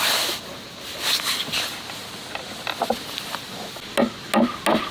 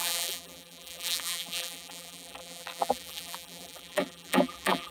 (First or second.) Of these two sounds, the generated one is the second